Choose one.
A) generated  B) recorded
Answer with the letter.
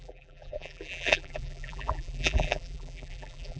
A